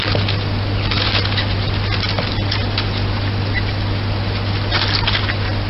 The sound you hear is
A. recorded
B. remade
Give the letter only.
A